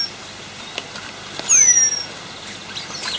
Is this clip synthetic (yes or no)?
no